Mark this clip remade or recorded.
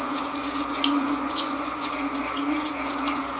remade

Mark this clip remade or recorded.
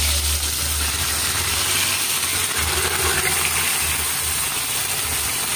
recorded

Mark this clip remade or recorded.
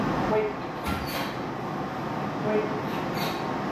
recorded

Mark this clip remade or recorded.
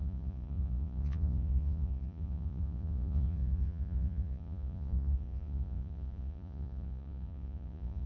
remade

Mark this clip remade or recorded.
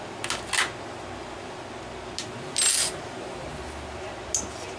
recorded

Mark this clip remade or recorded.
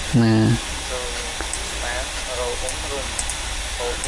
recorded